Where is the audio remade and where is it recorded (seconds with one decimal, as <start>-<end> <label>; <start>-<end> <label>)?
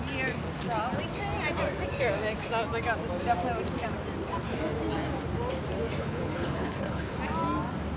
0.0-6.0 recorded; 6.0-7.2 remade; 7.2-8.0 recorded